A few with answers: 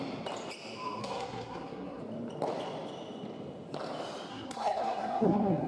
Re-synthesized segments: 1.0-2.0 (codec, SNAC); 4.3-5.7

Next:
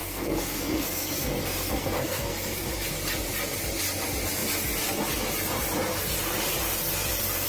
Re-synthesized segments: 0.0-2.9 (codec, SNAC)